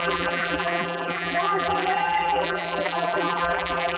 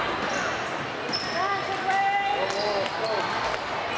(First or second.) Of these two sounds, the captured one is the second